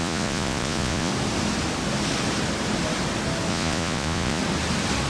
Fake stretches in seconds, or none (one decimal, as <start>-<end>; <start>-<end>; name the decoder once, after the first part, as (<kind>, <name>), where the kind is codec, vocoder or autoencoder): 0.0-1.1 (vocoder, Vocos); 3.5-4.4